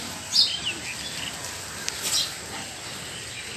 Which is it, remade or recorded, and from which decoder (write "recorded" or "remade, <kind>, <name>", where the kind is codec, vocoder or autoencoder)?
recorded